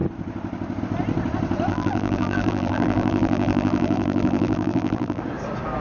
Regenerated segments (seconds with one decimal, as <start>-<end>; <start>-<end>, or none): 1.7-5.2